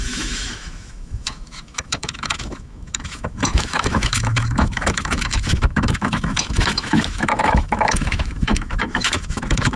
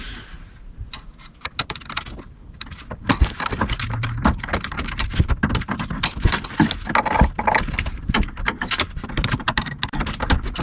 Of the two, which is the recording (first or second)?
second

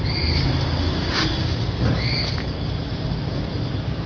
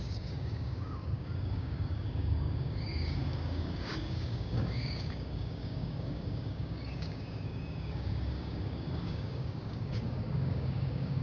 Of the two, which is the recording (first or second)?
first